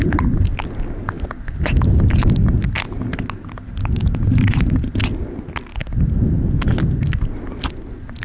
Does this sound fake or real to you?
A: real